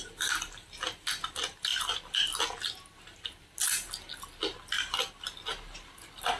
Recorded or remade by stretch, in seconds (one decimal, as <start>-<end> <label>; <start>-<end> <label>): 0.0-6.4 recorded